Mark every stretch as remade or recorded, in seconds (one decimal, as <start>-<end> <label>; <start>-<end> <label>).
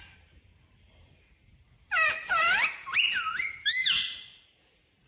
0.0-1.5 remade; 1.5-4.3 recorded; 4.3-5.1 remade